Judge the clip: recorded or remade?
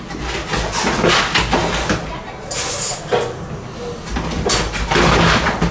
recorded